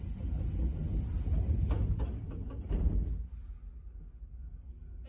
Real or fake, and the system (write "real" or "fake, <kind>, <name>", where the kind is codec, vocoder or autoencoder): real